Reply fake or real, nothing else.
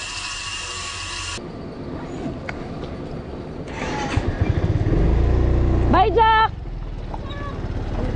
real